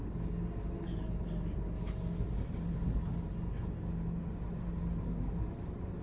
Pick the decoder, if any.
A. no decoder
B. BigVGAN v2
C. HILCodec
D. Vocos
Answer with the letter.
A